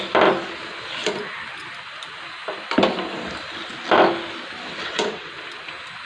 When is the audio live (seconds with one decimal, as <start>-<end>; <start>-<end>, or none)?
0.0-4.8; 5.3-6.1